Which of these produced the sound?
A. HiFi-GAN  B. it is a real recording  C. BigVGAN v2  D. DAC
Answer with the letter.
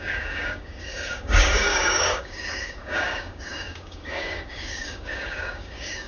D